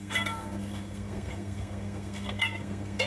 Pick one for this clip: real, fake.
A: fake